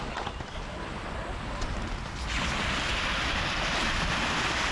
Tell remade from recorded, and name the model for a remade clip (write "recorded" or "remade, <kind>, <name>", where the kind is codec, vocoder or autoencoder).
recorded